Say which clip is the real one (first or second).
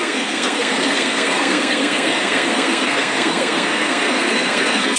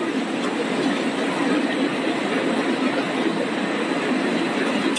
second